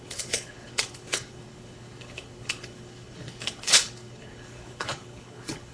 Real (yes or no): no